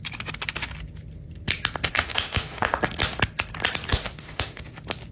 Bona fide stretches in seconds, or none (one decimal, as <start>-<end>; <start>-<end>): 0.0-1.9; 2.8-3.9; 4.6-5.1